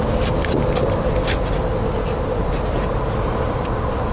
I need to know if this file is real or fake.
real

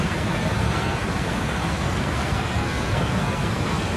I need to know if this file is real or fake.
fake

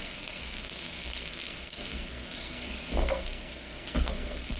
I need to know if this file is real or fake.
fake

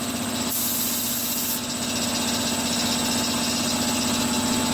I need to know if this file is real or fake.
real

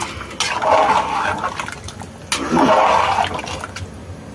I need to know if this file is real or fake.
real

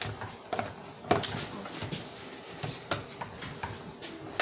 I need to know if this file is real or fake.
real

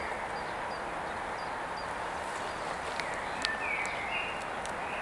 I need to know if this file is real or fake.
real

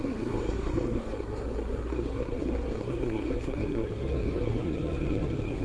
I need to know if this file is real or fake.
fake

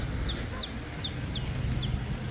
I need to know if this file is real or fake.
real